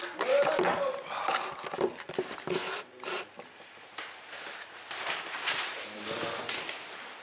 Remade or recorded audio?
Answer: recorded